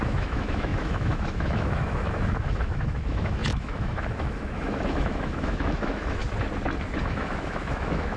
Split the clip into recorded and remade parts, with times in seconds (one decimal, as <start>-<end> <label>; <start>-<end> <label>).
0.0-6.2 remade; 6.2-7.0 recorded; 7.0-8.2 remade